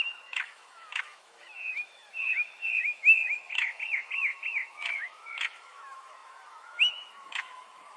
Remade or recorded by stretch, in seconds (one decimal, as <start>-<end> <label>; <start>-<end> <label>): 0.0-8.0 remade